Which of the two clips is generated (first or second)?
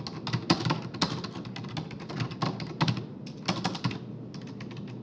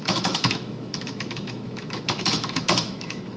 second